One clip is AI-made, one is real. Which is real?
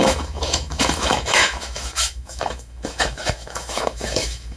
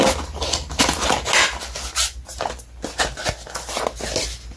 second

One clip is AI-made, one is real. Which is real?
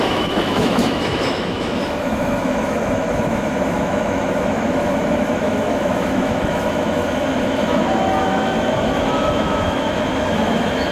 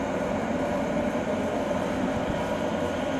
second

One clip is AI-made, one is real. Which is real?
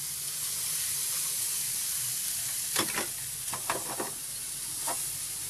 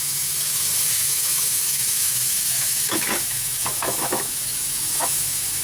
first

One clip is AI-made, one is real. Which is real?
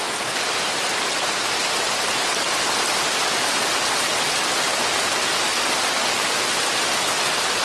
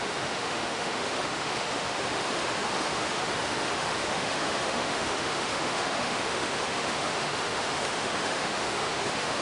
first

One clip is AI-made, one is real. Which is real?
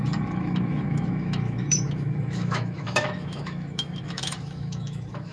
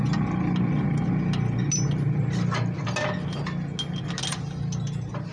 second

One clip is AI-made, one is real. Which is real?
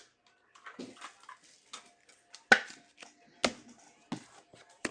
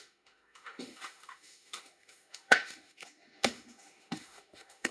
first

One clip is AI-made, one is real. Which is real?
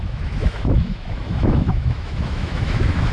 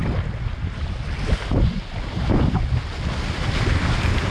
second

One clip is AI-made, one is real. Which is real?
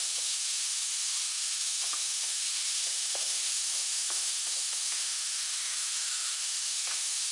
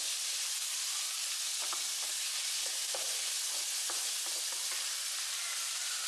second